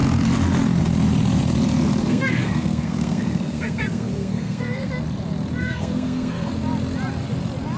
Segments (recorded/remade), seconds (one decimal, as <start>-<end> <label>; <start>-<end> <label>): 0.0-2.0 recorded; 2.0-4.9 remade; 4.9-5.6 recorded; 5.6-6.5 remade; 6.5-7.8 recorded